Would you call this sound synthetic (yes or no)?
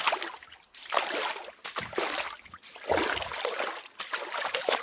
no